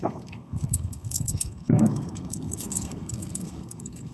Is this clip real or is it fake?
fake